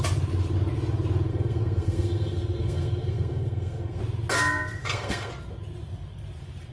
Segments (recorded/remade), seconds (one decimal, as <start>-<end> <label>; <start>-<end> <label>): 0.0-1.3 recorded; 1.3-4.0 remade; 4.0-4.8 recorded; 4.8-5.3 remade; 5.3-6.7 recorded